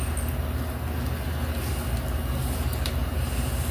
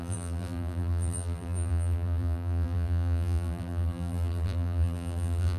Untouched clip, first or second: first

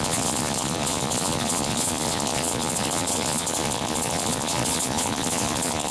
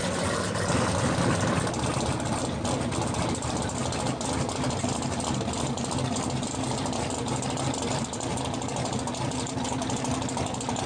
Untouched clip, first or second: second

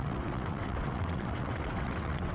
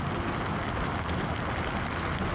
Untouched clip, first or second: second